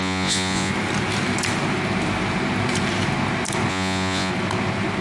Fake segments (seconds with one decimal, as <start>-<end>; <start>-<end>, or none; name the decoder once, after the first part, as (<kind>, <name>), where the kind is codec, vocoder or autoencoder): 0.0-0.7 (vocoder, Vocos); 3.7-4.3